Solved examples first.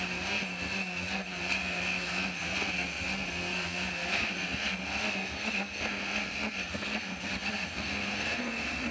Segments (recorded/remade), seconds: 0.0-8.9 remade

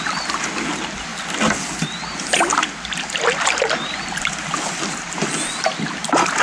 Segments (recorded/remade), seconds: 0.0-6.4 recorded

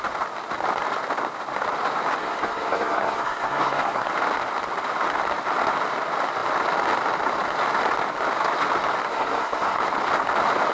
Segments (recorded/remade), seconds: 0.0-2.2 recorded; 2.2-4.1 remade; 4.1-9.1 recorded; 9.1-9.8 remade; 9.8-10.7 recorded